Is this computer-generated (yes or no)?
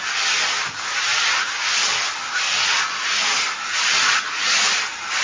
no